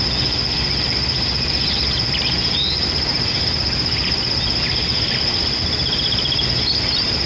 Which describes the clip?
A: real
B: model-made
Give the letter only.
A